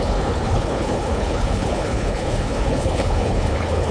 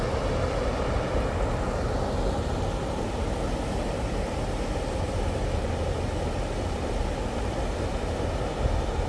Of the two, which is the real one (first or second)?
second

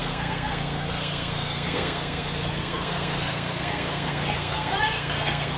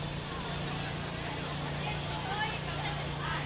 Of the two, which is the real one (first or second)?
second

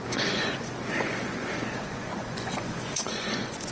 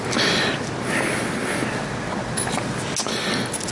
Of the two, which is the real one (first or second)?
second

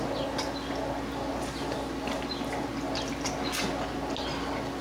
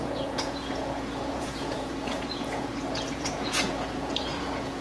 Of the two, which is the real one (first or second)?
first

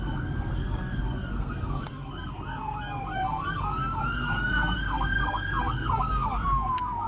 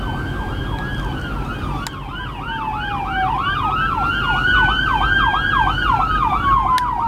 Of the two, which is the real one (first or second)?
second